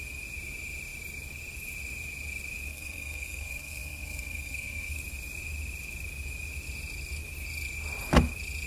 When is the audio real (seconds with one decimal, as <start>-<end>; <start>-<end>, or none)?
0.0-2.7; 5.0-8.7